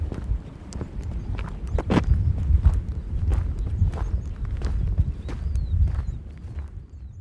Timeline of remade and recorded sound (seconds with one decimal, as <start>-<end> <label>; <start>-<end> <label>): 0.0-7.2 recorded